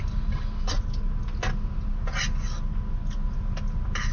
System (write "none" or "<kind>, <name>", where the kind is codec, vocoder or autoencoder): none